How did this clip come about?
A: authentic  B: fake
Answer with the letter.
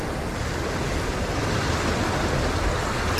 A